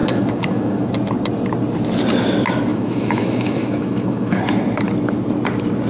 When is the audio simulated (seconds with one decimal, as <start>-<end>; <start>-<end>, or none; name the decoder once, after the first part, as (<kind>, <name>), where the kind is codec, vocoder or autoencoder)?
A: 0.0-0.9 (autoencoder, DAC-VAE); 2.7-4.4